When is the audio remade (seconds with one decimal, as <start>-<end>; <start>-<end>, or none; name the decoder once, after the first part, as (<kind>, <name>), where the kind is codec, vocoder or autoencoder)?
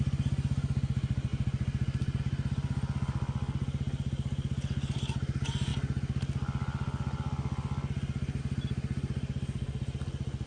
none